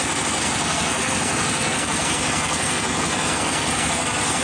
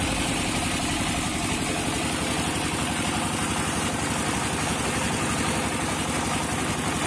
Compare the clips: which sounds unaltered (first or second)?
second